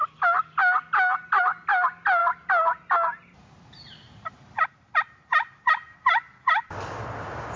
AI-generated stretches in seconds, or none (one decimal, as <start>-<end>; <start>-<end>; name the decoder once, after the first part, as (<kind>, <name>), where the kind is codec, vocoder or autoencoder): none